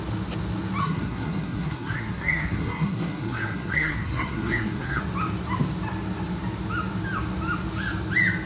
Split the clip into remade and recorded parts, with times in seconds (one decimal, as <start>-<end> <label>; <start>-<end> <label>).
0.0-0.8 recorded; 0.8-5.0 remade; 5.0-8.5 recorded

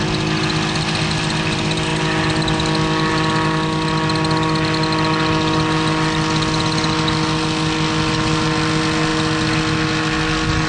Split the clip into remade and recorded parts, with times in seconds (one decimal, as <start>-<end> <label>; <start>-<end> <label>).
0.0-10.7 recorded

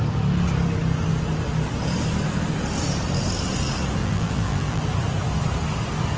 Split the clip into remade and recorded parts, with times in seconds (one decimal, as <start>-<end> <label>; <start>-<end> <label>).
0.0-4.0 recorded; 4.0-4.8 remade; 4.8-6.2 recorded

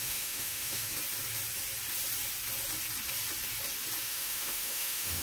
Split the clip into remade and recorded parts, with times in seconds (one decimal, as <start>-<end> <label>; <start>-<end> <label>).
0.0-0.9 remade; 0.9-4.0 recorded; 4.0-5.2 remade

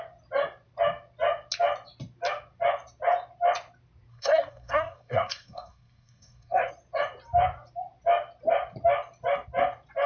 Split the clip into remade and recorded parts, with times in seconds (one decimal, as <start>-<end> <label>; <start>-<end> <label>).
0.0-4.1 recorded; 4.1-6.7 remade; 6.7-10.1 recorded

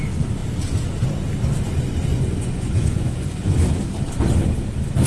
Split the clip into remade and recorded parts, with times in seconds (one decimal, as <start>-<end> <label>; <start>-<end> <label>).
0.0-2.1 recorded; 2.1-3.6 remade; 3.6-5.1 recorded

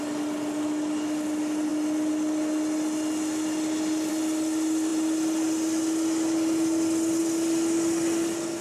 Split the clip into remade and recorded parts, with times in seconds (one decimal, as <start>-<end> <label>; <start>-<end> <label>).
0.0-8.6 recorded

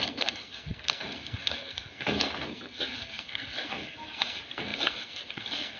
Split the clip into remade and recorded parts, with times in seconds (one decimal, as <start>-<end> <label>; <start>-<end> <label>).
0.0-5.8 remade